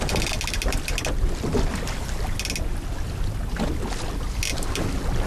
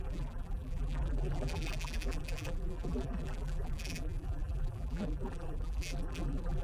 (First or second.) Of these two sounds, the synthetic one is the second